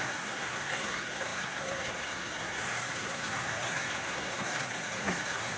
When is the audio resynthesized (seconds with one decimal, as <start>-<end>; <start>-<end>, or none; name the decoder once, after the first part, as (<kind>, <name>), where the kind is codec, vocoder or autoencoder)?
0.0-5.6 (codec, SNAC)